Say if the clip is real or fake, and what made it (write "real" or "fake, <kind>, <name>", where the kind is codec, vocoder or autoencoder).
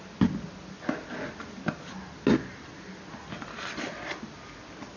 real